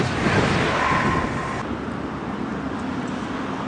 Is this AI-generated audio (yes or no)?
no